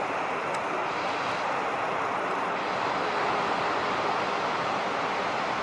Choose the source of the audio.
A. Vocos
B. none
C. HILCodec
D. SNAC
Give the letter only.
B